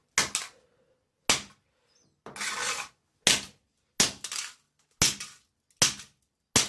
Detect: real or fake real